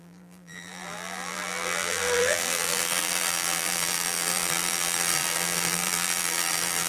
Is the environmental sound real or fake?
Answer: fake